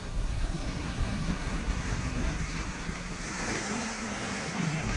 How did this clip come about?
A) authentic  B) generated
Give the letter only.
B